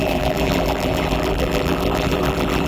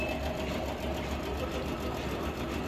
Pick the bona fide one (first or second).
second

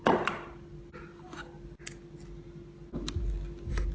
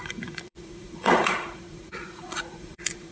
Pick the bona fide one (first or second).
first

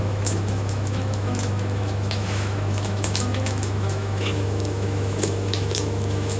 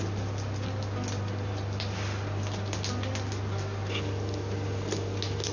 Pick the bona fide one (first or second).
second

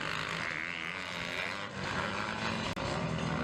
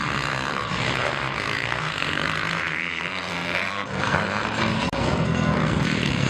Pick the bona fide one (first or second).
first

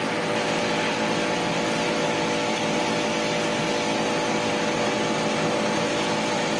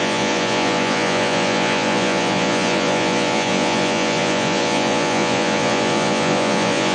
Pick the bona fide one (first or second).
first